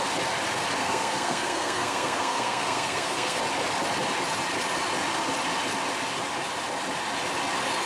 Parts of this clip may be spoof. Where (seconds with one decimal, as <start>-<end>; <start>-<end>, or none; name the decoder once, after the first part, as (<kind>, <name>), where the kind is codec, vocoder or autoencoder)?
0.8-3.4 (codec, SNAC)